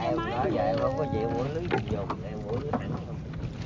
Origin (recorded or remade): recorded